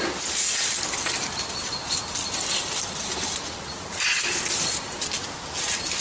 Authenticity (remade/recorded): recorded